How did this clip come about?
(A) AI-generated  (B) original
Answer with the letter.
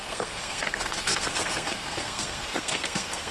A